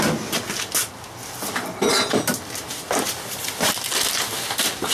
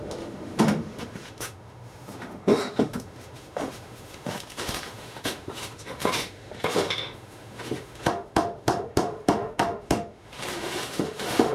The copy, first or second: second